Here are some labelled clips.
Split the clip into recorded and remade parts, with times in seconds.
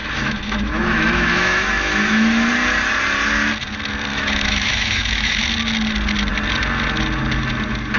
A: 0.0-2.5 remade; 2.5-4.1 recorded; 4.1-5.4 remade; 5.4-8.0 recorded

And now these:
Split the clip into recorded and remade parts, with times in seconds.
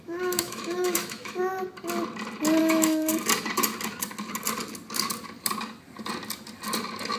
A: 0.0-1.4 remade; 1.4-2.6 recorded; 2.6-3.1 remade; 3.1-7.2 recorded